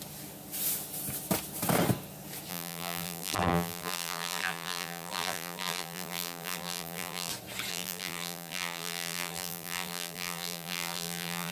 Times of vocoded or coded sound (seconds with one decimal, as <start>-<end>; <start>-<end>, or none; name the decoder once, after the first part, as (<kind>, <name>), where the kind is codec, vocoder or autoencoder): 2.5-7.3 (vocoder, BigVGAN v2); 7.7-11.5